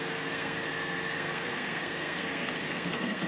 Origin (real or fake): fake